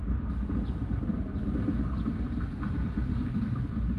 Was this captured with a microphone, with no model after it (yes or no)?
yes